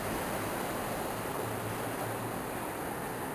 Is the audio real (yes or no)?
yes